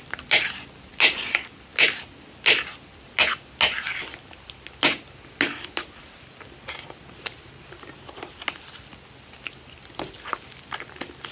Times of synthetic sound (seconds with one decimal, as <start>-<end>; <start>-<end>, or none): none